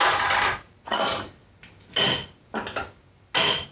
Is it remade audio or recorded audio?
recorded